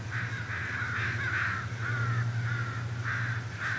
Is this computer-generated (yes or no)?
no